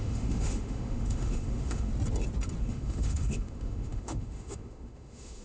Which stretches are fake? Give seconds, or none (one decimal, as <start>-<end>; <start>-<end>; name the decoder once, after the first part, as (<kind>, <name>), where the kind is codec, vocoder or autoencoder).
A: 0.0-1.9 (autoencoder, DAC-VAE); 2.6-5.4